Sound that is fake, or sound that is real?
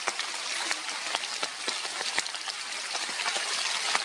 real